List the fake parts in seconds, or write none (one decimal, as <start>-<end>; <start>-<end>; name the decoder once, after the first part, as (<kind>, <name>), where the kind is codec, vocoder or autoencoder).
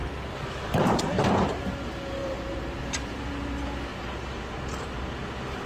0.0-1.2 (vocoder, BigVGAN v2); 2.2-3.3; 3.9-5.7